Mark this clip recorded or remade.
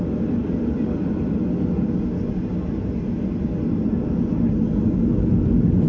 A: recorded